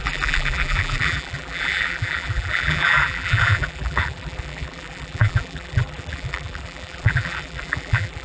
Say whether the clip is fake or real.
fake